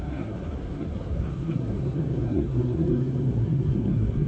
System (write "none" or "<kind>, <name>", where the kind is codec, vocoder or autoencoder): codec, SNAC